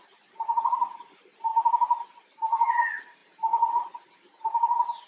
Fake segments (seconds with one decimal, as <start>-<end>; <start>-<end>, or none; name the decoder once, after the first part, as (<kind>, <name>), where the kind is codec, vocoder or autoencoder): 0.0-1.5 (vocoder, BigVGAN v2); 2.1-3.2; 3.7-4.3